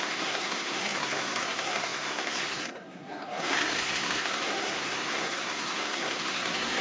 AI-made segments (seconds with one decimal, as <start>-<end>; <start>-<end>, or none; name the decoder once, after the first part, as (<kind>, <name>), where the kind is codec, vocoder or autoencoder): 0.0-6.8 (codec, SNAC)